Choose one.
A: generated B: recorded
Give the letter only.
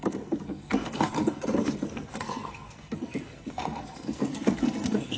A